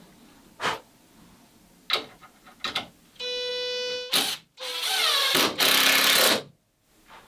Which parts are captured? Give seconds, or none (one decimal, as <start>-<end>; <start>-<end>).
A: 0.0-7.3